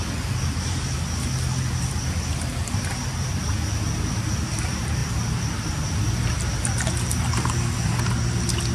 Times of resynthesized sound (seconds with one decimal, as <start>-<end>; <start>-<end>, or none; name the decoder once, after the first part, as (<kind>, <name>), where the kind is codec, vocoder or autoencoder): none

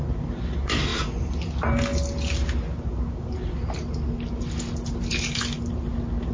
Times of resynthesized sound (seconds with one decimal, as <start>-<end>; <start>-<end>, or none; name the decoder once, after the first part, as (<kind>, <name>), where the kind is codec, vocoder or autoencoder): none

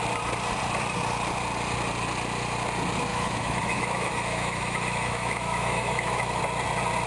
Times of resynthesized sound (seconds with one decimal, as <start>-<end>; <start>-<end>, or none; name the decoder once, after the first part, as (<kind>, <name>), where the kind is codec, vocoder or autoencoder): 3.1-6.4 (autoencoder, DAC-VAE)

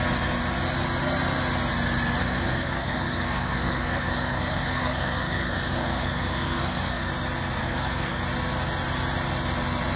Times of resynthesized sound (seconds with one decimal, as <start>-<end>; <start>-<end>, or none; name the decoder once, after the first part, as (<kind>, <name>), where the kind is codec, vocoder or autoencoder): 2.2-7.1 (codec, SNAC); 7.6-8.2

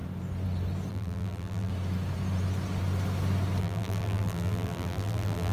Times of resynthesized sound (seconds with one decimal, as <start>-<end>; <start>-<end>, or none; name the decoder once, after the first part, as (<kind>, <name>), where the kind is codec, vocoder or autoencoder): 0.9-1.7 (vocoder, BigVGAN v2); 3.6-5.5

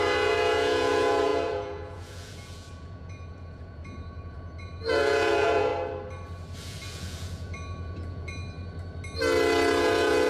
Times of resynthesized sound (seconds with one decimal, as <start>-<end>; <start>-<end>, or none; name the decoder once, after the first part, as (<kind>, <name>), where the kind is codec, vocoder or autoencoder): 0.0-5.7 (vocoder, Vocos); 6.6-8.4; 9.8-10.3

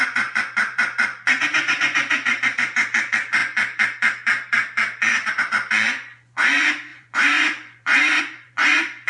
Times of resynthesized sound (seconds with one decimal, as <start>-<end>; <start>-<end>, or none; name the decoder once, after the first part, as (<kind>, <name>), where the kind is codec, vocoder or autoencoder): 0.0-3.4 (vocoder, Vocos); 5.1-9.1

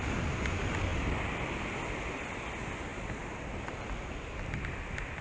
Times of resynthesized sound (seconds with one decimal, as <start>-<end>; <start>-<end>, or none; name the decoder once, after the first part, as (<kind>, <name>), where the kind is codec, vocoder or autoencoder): none